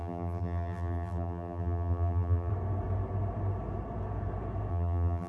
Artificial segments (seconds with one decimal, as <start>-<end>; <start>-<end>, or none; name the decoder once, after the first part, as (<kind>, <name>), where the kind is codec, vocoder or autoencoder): 0.0-2.5 (vocoder, BigVGAN v2); 4.7-5.3